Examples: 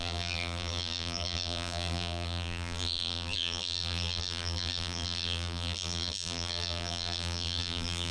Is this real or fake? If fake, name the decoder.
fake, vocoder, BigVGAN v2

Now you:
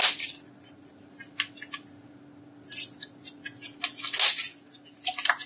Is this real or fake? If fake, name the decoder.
real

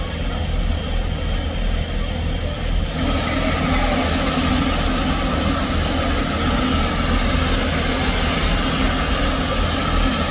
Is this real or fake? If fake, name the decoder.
real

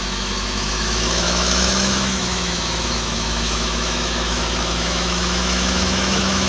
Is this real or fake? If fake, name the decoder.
fake, autoencoder, DAC-VAE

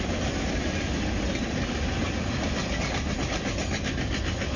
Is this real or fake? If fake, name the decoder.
real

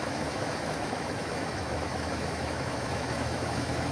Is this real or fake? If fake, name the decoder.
fake, autoencoder, DAC-VAE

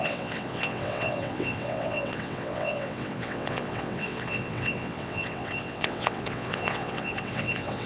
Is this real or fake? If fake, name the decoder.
fake, vocoder, WaveNeXt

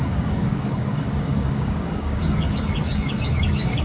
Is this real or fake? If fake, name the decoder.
fake, codec, DAC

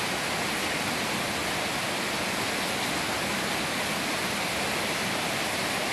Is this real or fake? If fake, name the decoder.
real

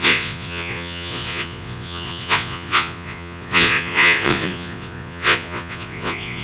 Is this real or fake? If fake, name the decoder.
fake, vocoder, Vocos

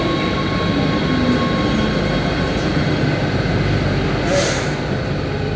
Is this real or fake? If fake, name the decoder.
real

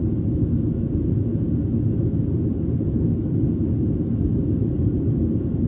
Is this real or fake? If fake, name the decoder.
real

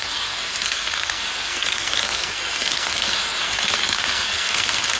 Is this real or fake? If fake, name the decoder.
fake, codec, SNAC